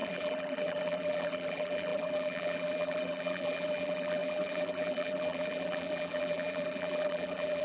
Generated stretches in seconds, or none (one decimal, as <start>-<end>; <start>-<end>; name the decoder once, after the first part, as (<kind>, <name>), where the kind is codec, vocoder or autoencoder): 0.0-7.6 (vocoder, BigVGAN v2)